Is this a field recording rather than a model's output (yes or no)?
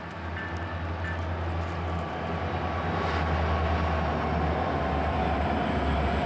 yes